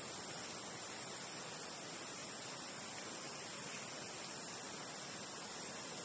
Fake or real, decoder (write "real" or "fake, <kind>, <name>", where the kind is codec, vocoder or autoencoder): real